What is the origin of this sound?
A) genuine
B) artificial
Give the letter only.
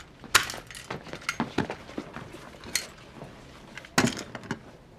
A